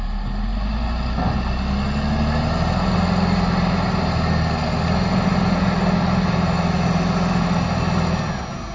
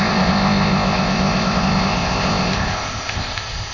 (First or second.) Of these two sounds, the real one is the first